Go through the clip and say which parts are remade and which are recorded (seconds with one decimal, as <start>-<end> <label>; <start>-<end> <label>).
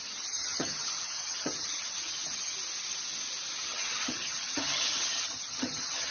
0.0-2.5 remade; 2.5-3.6 recorded; 3.6-6.1 remade